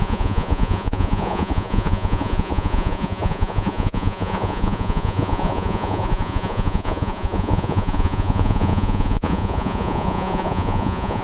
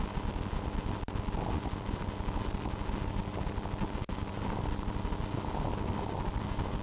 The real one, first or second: second